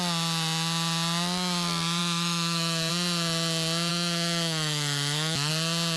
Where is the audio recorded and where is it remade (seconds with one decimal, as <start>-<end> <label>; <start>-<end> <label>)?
0.0-2.0 recorded; 2.0-2.9 remade; 2.9-3.9 recorded; 3.9-5.5 remade; 5.5-6.0 recorded